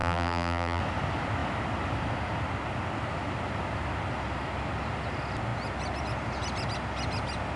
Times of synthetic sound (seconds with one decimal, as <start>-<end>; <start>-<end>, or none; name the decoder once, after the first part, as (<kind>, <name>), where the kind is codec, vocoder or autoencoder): 0.0-0.8 (vocoder, BigVGAN v2)

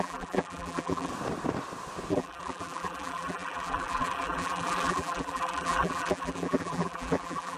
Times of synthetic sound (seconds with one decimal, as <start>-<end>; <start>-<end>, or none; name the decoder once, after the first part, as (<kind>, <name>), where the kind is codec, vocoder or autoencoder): 0.0-1.1 (vocoder, BigVGAN v2); 2.1-7.6